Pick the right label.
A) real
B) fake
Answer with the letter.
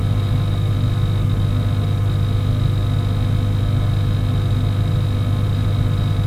A